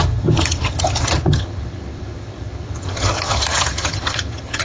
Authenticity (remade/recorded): remade